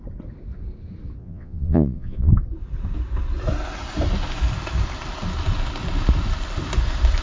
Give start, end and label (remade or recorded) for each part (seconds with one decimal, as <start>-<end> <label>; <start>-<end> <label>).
0.0-1.2 recorded; 1.2-2.3 remade; 2.3-7.2 recorded